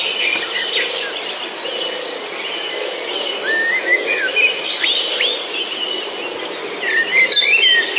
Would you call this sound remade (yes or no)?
no